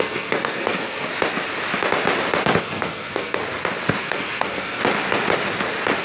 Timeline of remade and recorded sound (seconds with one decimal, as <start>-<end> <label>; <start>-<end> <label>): 0.0-1.1 remade; 1.1-2.6 recorded; 2.6-3.4 remade; 3.4-4.0 recorded; 4.0-4.8 remade; 4.8-6.0 recorded